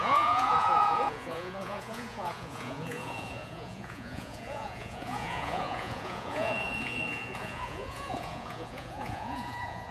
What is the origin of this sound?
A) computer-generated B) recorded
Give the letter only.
A